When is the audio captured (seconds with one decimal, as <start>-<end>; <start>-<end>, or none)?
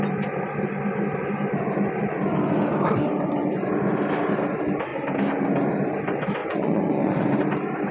0.0-6.4; 7.4-7.9